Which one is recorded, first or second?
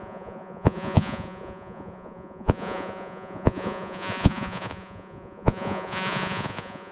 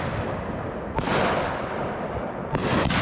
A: second